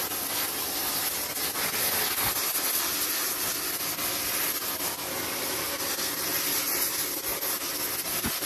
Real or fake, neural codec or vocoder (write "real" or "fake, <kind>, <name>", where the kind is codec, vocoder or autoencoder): real